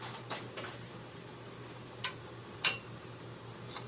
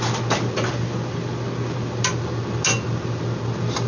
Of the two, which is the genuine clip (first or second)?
second